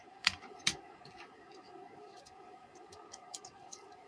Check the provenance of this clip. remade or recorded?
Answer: remade